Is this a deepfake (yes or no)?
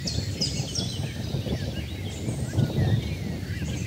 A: no